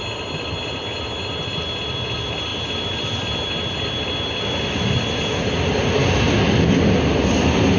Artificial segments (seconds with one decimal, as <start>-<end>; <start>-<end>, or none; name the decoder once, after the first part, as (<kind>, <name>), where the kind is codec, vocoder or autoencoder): none